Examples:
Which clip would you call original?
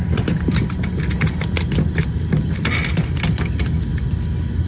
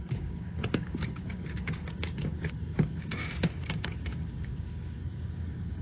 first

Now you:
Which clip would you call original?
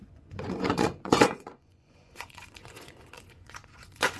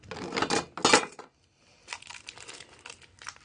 second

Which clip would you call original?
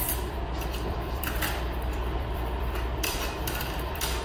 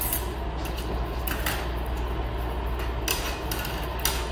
second